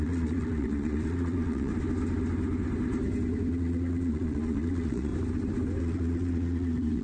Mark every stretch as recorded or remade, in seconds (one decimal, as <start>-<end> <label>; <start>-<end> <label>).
0.0-1.7 remade; 1.7-3.5 recorded; 3.5-5.1 remade; 5.1-5.8 recorded; 5.8-7.0 remade